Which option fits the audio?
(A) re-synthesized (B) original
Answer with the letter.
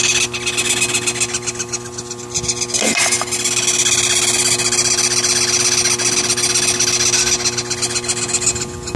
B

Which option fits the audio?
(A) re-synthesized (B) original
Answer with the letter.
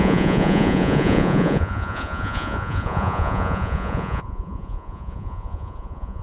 A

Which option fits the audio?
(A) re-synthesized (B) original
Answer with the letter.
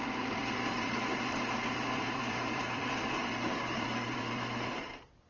A